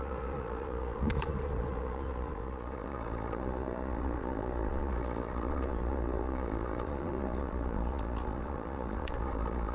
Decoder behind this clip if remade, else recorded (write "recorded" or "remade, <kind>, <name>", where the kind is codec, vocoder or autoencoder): remade, vocoder, Vocos